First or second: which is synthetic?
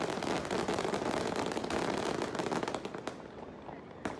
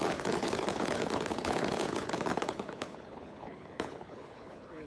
second